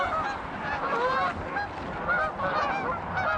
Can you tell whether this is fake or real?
real